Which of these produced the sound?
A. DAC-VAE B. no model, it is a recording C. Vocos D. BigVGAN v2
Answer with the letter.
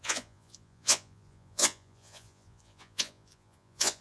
C